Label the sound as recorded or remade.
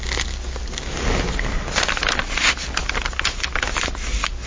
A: recorded